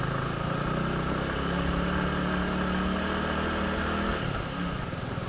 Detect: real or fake real